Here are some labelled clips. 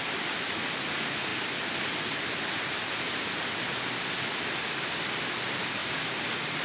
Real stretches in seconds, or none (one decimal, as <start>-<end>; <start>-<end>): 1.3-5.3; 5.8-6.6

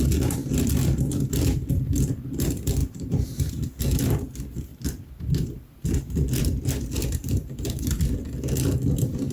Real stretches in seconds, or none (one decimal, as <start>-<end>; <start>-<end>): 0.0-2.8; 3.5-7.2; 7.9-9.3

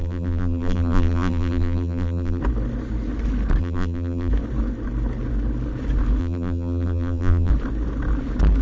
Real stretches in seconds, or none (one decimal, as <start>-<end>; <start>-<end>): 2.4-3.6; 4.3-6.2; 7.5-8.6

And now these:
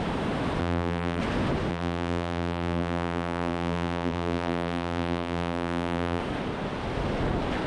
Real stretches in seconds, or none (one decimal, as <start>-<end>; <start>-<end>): 0.0-0.6; 1.2-1.7; 6.2-7.7

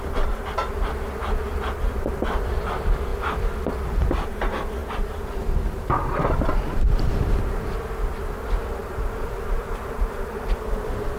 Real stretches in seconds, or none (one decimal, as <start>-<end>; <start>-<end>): 0.0-4.8; 7.1-8.8; 10.3-11.2